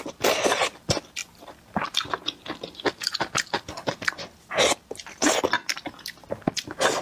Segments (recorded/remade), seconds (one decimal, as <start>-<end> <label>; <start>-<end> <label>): 0.0-7.0 recorded